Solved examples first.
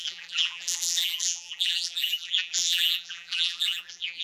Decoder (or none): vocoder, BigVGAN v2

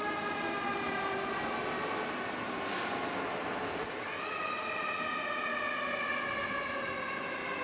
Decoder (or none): none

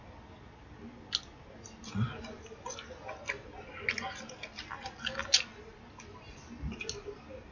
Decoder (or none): none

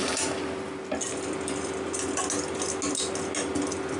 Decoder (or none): none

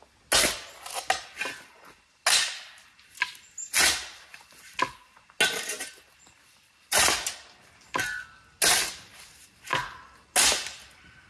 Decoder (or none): none